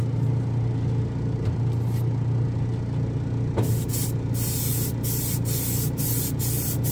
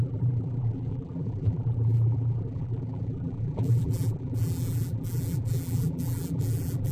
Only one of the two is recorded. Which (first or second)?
first